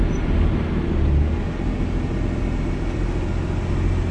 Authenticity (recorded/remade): recorded